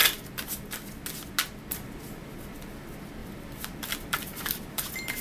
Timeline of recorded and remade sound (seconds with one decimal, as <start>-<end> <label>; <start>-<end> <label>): 0.0-3.2 recorded; 3.2-5.2 remade